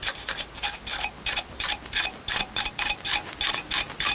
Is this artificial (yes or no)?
no